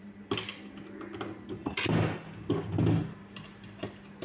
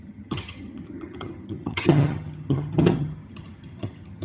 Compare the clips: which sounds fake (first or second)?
second